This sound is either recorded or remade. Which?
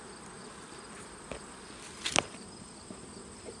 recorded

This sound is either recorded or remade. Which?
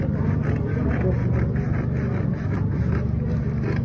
recorded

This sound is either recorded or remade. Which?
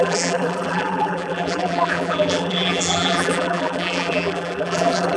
remade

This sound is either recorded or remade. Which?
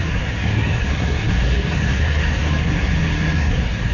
remade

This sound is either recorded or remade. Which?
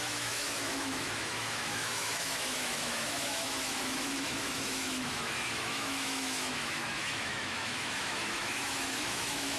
remade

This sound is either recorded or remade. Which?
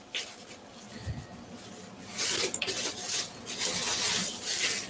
recorded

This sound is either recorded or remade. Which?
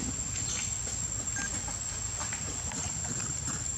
recorded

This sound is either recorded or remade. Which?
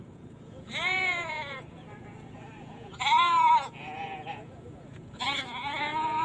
remade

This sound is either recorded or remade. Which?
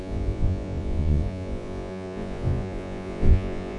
remade